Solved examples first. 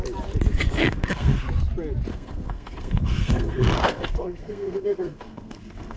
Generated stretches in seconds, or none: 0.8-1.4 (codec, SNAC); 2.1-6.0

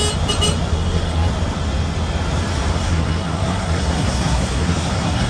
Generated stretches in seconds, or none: 0.7-1.3 (codec, SNAC); 2.7-5.3

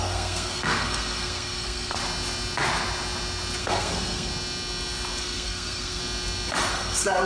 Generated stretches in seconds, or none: 0.0-2.0 (codec, SNAC); 3.6-4.3; 5.2-6.0; 6.7-7.3

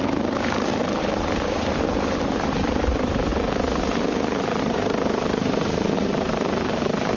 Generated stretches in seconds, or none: 0.0-3.3 (vocoder, BigVGAN v2); 4.6-7.2

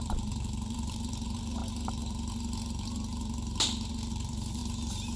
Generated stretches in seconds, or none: 0.0-1.6 (vocoder, BigVGAN v2); 3.9-4.6

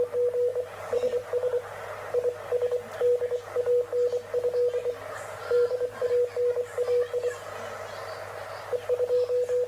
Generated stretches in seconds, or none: 0.5-1.6 (vocoder, BigVGAN v2); 4.8-6.1